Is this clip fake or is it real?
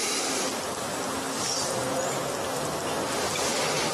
real